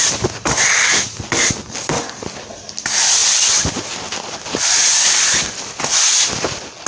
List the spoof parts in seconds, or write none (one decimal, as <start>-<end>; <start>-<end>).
3.2-3.9; 4.8-5.8